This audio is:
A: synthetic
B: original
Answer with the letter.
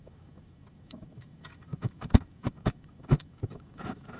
A